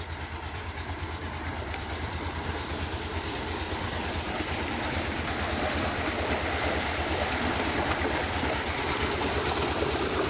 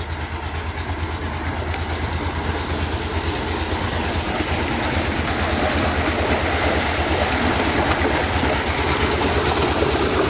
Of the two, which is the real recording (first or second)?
second